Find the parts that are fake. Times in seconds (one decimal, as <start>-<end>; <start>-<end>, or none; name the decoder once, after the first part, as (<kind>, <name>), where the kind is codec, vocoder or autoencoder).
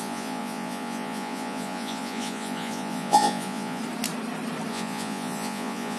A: 0.0-3.8 (vocoder, Vocos); 4.7-6.0